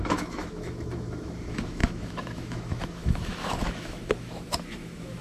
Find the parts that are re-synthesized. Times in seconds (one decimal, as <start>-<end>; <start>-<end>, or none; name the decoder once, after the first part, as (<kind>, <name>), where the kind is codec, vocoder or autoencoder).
0.0-5.2 (autoencoder, DAC-VAE)